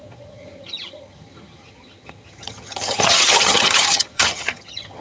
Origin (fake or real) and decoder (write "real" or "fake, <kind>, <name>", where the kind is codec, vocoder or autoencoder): fake, vocoder, HiFi-GAN